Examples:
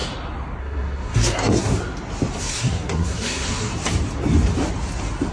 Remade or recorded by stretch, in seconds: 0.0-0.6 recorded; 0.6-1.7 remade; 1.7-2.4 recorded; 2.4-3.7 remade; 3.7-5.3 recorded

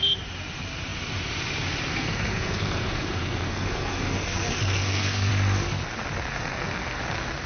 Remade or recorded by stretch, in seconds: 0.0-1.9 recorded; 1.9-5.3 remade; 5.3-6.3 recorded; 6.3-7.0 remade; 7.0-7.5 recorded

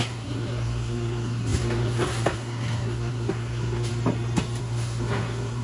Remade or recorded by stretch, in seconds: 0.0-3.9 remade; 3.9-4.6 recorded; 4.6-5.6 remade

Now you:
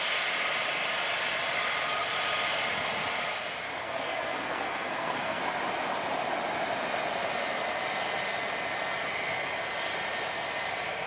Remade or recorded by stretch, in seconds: 0.0-3.8 recorded; 3.8-5.4 remade; 5.4-11.1 recorded

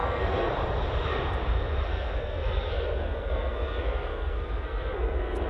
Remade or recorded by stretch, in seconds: 0.0-0.5 remade; 0.5-1.9 recorded; 1.9-5.5 remade

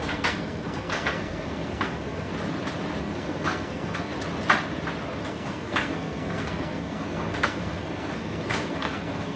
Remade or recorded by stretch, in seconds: 0.0-2.3 remade; 2.3-3.0 recorded; 3.0-4.1 remade; 4.1-5.2 recorded; 5.2-9.4 remade